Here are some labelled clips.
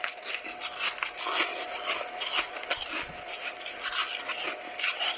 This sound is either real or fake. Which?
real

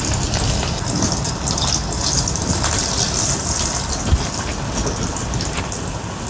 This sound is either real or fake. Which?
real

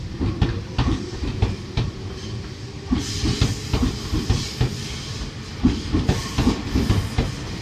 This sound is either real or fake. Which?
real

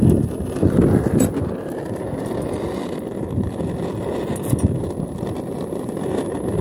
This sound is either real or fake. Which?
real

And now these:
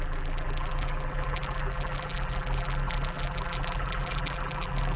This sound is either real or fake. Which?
fake